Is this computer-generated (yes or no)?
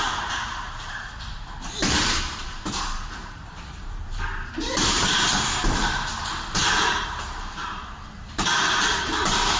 yes